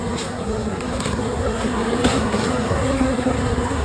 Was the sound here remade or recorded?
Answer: remade